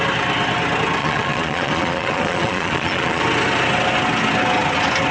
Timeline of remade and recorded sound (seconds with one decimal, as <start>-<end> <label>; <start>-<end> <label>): 0.0-1.0 recorded; 1.0-3.2 remade; 3.2-5.1 recorded